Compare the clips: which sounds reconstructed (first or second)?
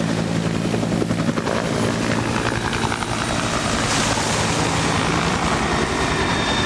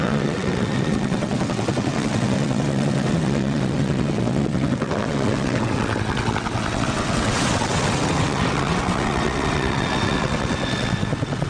second